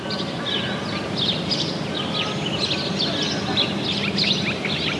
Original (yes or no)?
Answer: yes